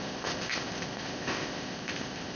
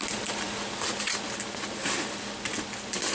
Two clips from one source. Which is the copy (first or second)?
first